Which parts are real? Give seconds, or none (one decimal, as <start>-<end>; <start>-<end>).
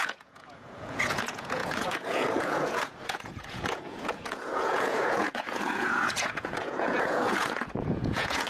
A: none